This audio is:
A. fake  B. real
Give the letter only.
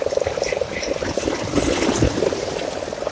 B